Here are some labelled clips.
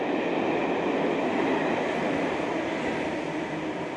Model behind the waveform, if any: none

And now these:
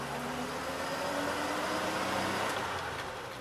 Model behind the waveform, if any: none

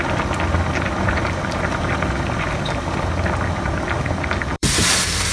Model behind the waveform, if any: vocoder, BigVGAN v2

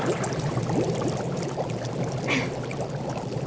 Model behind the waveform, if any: none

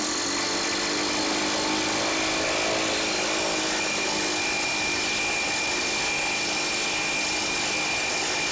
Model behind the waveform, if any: none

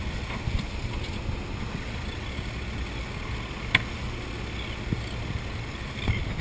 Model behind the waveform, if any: none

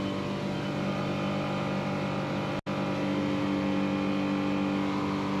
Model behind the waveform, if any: none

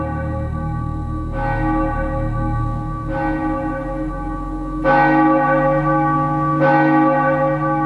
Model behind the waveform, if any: none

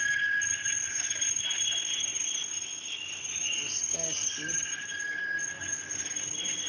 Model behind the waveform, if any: none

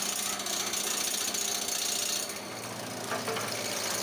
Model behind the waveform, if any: none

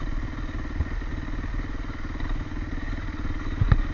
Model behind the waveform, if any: none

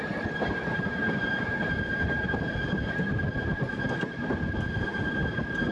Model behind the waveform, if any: none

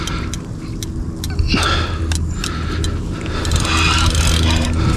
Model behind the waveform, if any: none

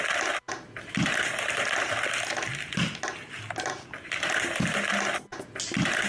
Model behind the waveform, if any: none